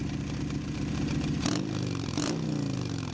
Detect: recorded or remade recorded